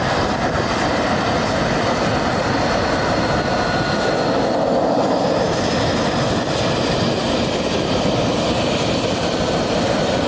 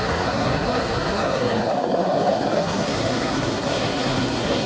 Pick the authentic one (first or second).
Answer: first